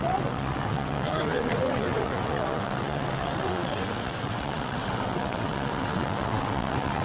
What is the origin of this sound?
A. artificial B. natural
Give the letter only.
A